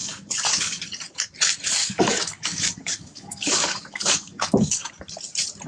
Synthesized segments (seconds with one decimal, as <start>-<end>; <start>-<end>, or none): 0.0-0.8; 1.8-4.9